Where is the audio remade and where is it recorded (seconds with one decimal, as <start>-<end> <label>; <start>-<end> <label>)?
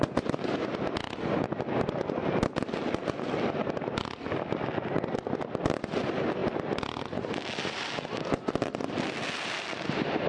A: 0.0-10.3 recorded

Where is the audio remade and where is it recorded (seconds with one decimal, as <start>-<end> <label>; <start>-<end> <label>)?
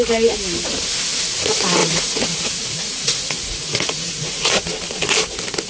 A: 0.0-1.8 recorded; 1.8-4.5 remade; 4.5-5.7 recorded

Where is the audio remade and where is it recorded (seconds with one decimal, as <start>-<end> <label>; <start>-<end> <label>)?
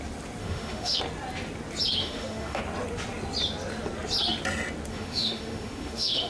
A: 0.0-0.4 recorded; 0.4-1.0 remade; 1.0-2.0 recorded; 2.0-2.6 remade; 2.6-4.9 recorded; 4.9-6.3 remade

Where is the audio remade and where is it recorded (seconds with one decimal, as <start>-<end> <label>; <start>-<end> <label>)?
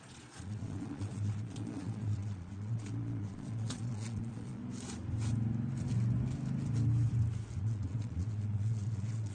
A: 0.0-4.6 remade; 4.6-7.6 recorded; 7.6-9.3 remade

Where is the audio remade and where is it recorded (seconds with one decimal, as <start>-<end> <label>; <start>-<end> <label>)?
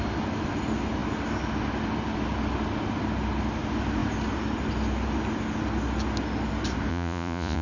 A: 0.0-6.9 recorded; 6.9-7.6 remade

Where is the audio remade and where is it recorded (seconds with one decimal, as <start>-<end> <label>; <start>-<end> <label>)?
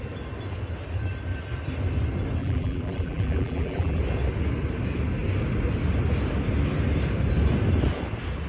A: 0.0-2.4 recorded; 2.4-4.0 remade; 4.0-8.5 recorded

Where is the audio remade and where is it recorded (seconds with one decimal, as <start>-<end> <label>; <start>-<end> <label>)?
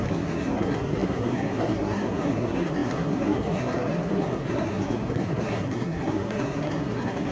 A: 0.0-7.3 remade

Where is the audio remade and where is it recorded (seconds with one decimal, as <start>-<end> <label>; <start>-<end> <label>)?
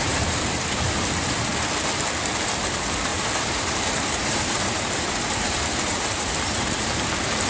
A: 0.0-1.5 remade; 1.5-2.5 recorded; 2.5-7.5 remade